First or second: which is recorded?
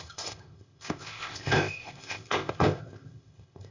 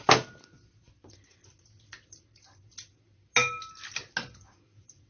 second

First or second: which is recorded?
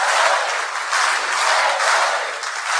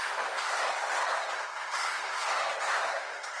first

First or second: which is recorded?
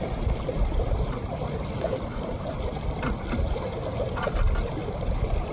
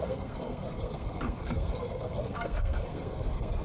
first